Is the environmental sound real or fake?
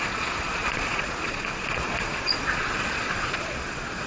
fake